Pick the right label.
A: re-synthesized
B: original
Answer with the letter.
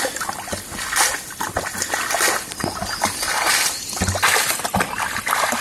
B